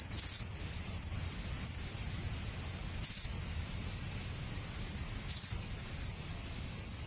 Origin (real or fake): real